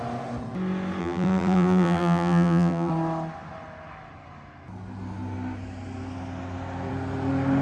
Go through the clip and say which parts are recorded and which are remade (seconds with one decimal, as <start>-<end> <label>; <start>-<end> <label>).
0.0-1.0 recorded; 1.0-2.9 remade; 2.9-7.6 recorded